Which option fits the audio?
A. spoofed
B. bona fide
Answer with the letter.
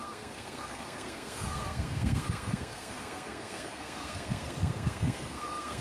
A